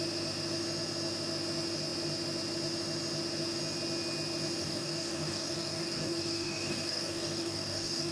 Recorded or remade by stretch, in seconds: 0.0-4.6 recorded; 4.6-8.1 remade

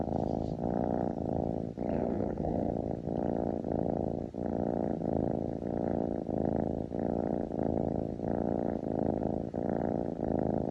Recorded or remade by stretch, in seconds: 0.0-1.9 recorded; 1.9-2.7 remade; 2.7-10.7 recorded

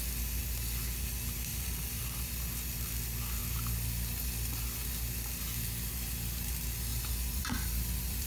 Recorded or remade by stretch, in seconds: 0.0-1.5 recorded; 1.5-2.4 remade; 2.4-6.9 recorded; 6.9-8.3 remade

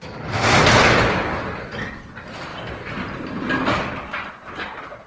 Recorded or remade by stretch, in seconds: 0.0-5.1 recorded

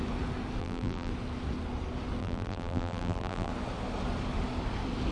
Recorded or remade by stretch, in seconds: 0.0-0.6 recorded; 0.6-1.1 remade; 1.1-2.2 recorded; 2.2-3.5 remade; 3.5-5.1 recorded